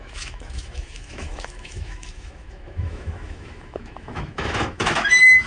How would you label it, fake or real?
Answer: fake